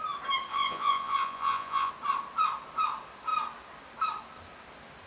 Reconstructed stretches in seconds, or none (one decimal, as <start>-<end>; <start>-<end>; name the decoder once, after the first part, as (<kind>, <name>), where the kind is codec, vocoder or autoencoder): 0.5-1.9 (vocoder, Vocos)